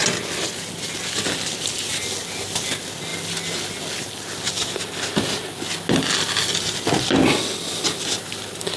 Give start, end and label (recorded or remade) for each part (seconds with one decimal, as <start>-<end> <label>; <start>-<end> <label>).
0.0-8.8 recorded